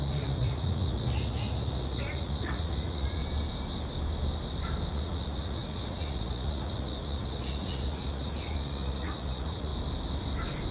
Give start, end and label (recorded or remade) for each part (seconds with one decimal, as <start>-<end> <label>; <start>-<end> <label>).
0.0-3.2 remade; 3.2-4.9 recorded; 4.9-9.7 remade; 9.7-10.7 recorded